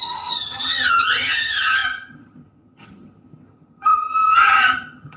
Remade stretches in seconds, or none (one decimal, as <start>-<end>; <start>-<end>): 0.0-5.2